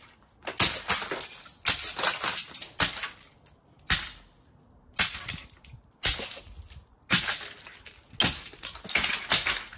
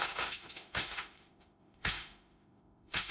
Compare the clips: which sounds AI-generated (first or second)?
second